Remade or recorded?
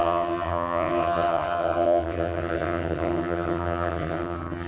remade